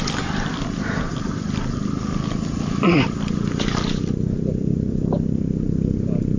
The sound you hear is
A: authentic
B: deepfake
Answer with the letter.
A